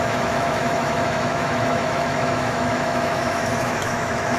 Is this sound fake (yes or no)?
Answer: yes